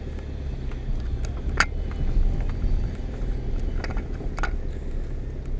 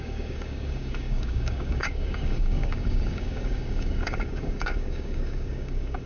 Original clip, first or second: first